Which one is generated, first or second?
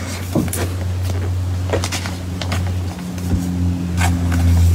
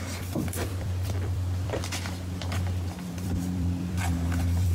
second